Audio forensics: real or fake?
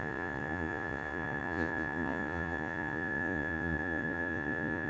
fake